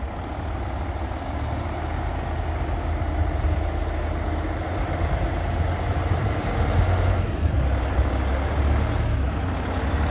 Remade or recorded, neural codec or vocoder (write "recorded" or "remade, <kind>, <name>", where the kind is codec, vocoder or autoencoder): recorded